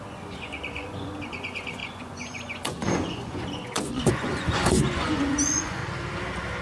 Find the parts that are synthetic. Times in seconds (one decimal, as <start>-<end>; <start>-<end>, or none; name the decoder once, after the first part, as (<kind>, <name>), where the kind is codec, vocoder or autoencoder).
0.0-5.8 (vocoder, Vocos)